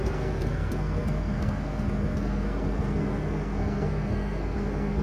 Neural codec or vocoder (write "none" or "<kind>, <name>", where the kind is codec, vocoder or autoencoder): codec, SNAC